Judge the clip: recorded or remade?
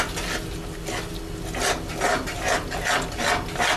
recorded